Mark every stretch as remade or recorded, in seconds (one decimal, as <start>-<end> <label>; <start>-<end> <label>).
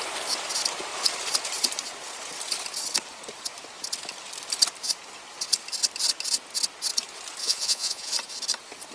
0.0-7.4 recorded; 7.4-8.1 remade; 8.1-8.9 recorded